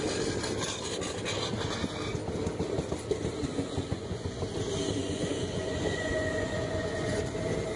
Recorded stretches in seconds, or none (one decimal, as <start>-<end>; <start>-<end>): 0.0-3.5; 4.4-5.0; 7.2-7.8